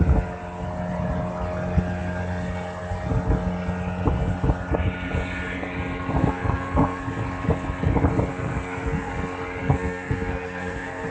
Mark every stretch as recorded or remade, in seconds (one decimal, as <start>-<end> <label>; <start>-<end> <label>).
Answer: 0.0-6.2 recorded; 6.2-7.0 remade; 7.0-8.3 recorded; 8.3-9.1 remade; 9.1-9.6 recorded; 9.6-11.1 remade